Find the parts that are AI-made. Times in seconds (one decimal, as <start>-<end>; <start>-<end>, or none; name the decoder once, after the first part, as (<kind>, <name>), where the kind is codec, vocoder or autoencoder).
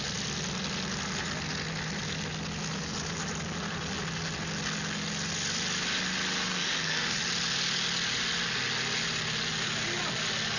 6.5-7.2 (codec, SNAC)